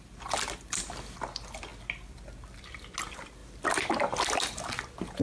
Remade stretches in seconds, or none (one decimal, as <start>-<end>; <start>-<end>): none